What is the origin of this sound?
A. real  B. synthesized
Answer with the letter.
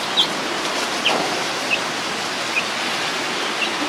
A